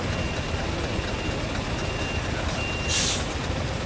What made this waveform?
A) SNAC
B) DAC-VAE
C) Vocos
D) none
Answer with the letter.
D